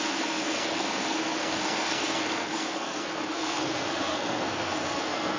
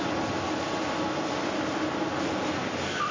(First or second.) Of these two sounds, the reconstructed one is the first